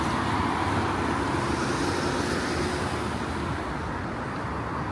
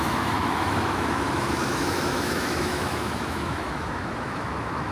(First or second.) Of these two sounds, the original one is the first